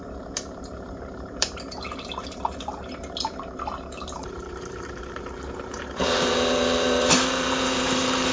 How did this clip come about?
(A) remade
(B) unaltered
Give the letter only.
A